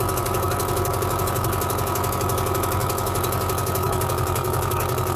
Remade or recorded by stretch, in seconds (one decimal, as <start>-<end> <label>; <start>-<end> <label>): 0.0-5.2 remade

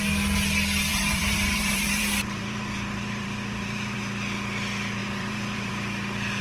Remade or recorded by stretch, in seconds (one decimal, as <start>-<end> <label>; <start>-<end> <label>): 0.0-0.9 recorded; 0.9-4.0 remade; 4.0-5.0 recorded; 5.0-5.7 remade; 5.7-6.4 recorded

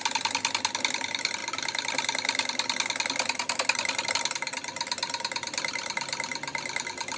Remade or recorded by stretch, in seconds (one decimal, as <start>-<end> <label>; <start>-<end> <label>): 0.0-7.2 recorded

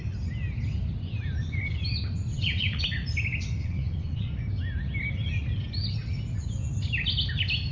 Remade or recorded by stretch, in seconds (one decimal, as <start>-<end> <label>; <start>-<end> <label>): 0.0-2.3 recorded; 2.3-2.8 remade; 2.8-3.6 recorded; 3.6-4.3 remade; 4.3-7.7 recorded